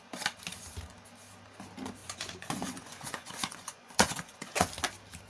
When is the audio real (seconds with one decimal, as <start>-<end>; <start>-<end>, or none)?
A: 0.0-2.0; 4.7-5.3